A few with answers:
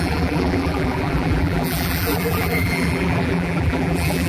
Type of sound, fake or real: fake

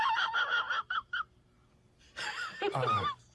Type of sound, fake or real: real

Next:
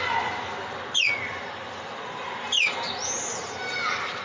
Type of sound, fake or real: real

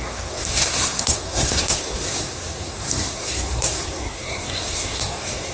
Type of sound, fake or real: fake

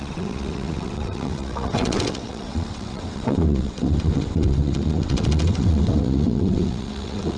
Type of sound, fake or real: fake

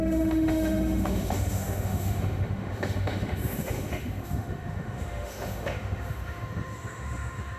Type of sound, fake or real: fake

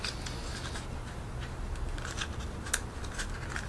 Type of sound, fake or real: real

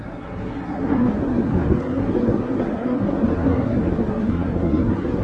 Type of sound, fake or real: fake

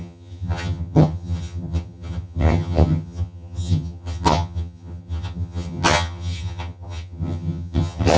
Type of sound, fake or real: fake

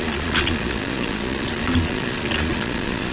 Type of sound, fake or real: fake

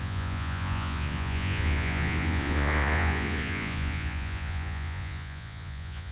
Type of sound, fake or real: fake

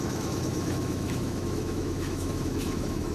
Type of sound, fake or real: fake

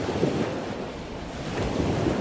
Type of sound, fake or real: real